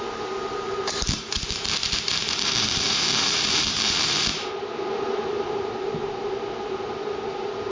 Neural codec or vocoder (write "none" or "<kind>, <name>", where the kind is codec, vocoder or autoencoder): vocoder, BigVGAN v2